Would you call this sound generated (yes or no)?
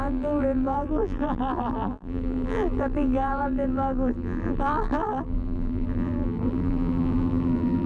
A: yes